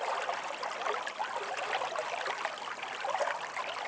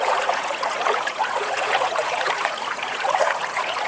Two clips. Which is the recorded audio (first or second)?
first